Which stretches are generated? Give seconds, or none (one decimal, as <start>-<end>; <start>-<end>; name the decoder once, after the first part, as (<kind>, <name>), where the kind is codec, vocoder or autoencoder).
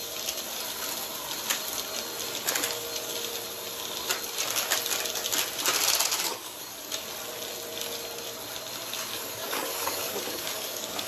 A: 6.3-6.9 (codec, DAC); 9.1-11.1